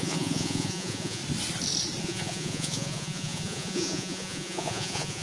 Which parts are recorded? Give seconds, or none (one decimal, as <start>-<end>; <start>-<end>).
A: 1.2-2.0